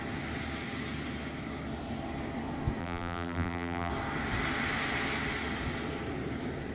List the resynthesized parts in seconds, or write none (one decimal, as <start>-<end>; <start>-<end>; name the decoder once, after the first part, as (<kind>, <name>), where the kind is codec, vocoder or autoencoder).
2.8-3.9 (vocoder, BigVGAN v2)